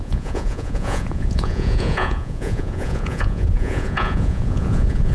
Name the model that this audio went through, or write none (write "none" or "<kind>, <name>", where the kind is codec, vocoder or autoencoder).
vocoder, Vocos